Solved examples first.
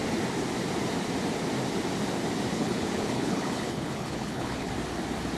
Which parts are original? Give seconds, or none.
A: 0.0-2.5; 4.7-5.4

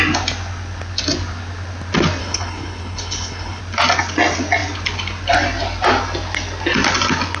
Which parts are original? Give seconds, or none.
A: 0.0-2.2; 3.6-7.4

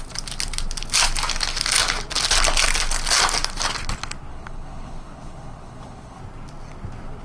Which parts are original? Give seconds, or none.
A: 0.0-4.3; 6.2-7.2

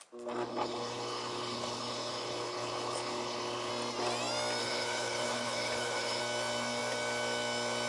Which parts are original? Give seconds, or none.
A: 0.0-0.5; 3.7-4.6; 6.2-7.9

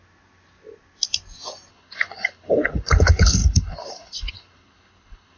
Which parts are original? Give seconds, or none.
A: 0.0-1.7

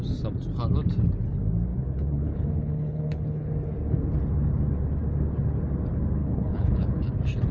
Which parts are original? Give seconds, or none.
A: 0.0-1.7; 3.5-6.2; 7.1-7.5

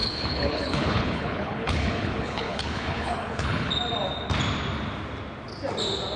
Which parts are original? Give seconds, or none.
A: 3.7-6.2

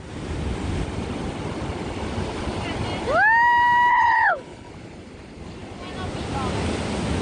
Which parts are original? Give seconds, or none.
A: 0.0-3.9; 4.7-7.2